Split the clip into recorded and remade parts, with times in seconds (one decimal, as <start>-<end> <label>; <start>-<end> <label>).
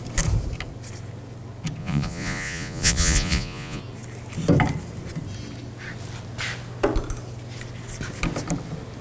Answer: 0.0-1.8 recorded; 1.8-3.8 remade; 3.8-9.0 recorded